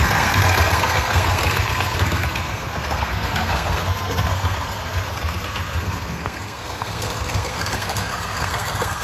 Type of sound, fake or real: fake